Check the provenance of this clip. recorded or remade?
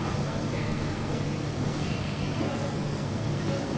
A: remade